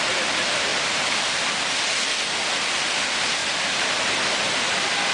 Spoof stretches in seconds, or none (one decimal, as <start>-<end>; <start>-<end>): 0.7-1.5